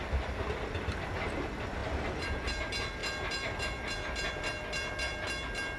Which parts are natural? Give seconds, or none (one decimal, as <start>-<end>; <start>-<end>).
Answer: 0.0-5.8

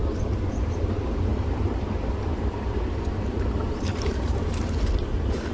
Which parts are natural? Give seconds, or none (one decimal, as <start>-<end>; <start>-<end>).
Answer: 0.0-0.5

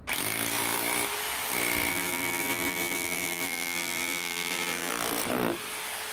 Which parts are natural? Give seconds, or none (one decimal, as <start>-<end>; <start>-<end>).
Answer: 0.0-1.9; 4.9-6.1

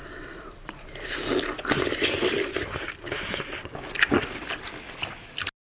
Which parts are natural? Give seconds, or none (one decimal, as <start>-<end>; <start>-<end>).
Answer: 3.4-4.4; 5.3-5.7